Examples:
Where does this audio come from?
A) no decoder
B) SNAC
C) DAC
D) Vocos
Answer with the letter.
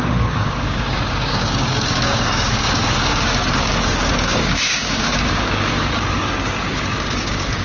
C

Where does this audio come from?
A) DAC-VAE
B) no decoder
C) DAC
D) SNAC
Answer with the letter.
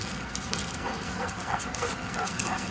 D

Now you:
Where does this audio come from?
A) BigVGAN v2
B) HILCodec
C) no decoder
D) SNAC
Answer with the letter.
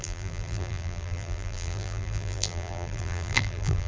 A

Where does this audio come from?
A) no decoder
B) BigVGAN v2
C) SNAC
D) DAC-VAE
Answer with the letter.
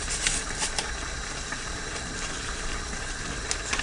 B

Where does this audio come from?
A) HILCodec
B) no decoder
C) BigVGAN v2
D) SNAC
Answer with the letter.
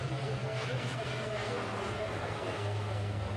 D